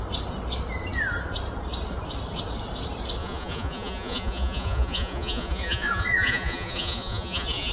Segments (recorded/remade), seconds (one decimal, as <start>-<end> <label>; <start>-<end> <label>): 0.0-3.2 recorded; 3.2-7.7 remade